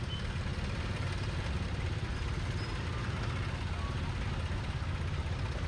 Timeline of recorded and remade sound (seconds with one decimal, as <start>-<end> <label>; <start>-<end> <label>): 0.0-5.7 recorded